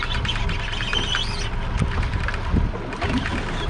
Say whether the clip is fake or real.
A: real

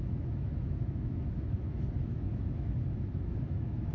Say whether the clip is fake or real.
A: fake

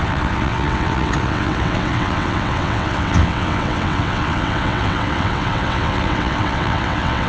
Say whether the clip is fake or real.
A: fake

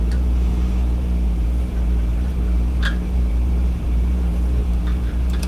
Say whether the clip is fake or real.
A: fake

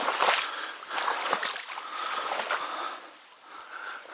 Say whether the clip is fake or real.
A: real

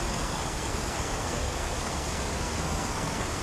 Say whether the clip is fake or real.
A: fake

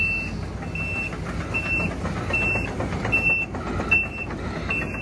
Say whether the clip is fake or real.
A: real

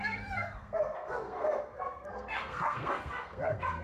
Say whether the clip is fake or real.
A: fake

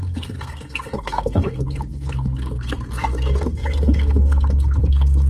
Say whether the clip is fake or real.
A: fake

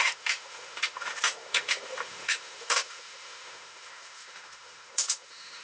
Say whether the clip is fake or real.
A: fake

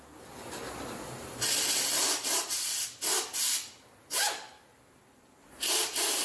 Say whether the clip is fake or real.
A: real